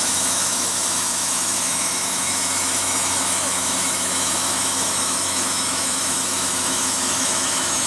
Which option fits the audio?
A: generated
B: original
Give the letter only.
A